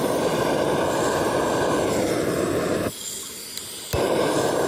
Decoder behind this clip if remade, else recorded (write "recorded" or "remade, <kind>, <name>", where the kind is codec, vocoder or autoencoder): recorded